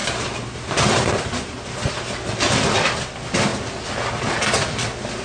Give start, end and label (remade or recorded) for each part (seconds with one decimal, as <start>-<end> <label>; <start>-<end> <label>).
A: 0.0-5.2 recorded